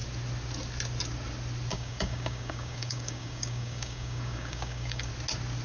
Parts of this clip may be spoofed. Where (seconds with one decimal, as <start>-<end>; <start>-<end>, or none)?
1.7-5.1